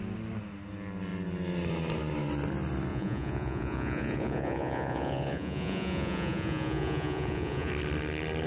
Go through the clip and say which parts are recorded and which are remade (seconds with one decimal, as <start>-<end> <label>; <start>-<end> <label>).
0.0-2.9 recorded; 2.9-7.7 remade; 7.7-8.5 recorded